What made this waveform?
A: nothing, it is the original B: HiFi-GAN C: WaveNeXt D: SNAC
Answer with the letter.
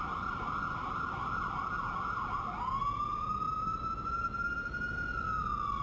A